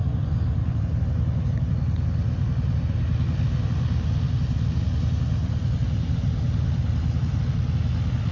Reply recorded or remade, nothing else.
recorded